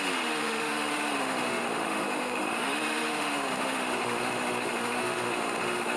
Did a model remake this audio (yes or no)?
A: yes